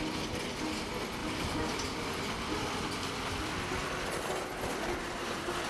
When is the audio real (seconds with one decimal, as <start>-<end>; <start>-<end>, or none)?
0.0-1.2; 4.3-4.7